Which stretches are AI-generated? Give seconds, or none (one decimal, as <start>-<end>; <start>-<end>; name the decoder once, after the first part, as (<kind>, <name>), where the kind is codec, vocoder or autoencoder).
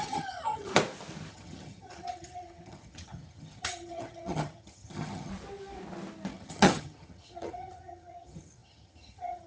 0.0-0.7 (vocoder, HiFi-GAN); 1.3-5.3; 6.3-9.5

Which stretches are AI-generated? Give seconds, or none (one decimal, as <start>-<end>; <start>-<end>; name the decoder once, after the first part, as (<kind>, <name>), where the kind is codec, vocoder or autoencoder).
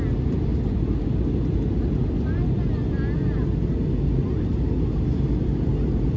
none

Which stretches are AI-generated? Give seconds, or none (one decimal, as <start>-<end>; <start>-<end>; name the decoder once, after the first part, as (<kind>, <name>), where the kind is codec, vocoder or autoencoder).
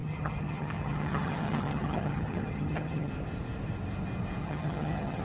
0.0-3.1 (vocoder, HiFi-GAN); 4.4-5.2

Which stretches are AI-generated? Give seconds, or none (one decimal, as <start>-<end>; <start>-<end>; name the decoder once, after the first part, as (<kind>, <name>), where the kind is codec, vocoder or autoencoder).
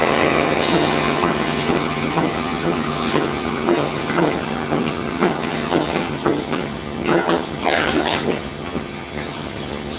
0.0-10.0 (vocoder, HiFi-GAN)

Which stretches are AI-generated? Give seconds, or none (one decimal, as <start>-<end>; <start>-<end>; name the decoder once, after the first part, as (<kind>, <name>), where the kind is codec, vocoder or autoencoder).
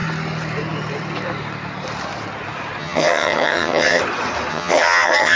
2.8-4.0 (vocoder, HiFi-GAN); 4.5-5.4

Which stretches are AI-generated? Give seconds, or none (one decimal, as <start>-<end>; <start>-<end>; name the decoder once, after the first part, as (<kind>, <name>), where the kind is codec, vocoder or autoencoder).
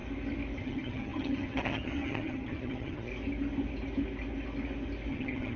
0.6-3.1 (vocoder, HiFi-GAN); 5.1-5.6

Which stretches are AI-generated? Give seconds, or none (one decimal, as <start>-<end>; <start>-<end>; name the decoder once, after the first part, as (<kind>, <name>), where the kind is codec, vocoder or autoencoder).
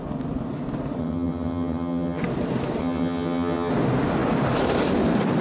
1.0-2.2 (vocoder, HiFi-GAN); 2.8-3.7